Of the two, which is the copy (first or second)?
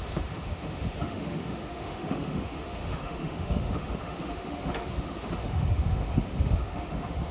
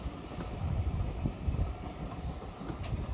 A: first